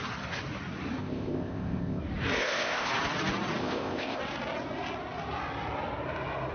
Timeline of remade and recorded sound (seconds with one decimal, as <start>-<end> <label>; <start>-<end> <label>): 0.0-1.0 recorded; 1.0-2.0 remade; 2.0-2.4 recorded; 2.4-2.9 remade; 2.9-3.6 recorded; 3.6-4.2 remade; 4.2-6.5 recorded